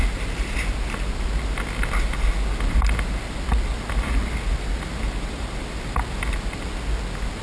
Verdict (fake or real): real